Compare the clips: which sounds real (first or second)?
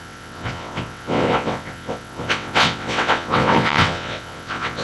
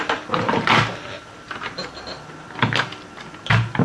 second